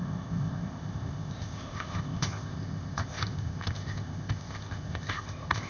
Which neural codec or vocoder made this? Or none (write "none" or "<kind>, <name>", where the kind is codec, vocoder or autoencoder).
codec, ZipCodec